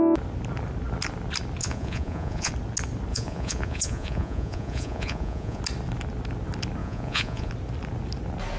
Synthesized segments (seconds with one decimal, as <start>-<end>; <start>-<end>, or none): 1.6-2.5; 3.1-5.6; 6.8-7.5